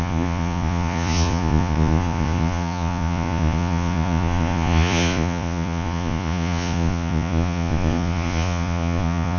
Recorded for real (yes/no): no